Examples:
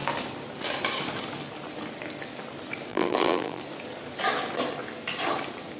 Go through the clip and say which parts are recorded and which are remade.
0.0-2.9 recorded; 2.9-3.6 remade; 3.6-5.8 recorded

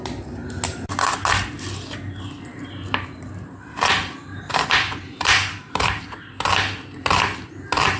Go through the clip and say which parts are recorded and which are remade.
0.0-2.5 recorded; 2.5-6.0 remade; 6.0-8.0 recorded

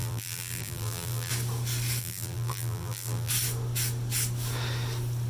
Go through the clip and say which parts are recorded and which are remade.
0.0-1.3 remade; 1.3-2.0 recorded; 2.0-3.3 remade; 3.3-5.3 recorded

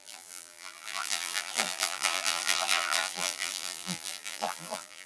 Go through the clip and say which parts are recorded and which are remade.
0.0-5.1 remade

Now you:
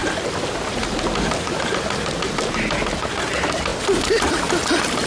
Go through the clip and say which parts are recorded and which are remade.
0.0-5.1 recorded